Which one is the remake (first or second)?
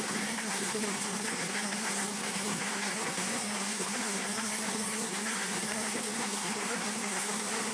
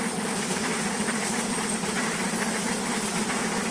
first